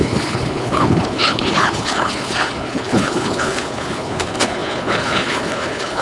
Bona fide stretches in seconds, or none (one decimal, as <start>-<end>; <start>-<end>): none